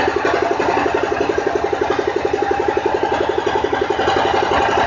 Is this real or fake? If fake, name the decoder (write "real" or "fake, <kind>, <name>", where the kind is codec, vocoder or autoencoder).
real